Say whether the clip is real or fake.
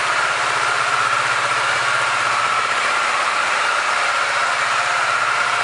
fake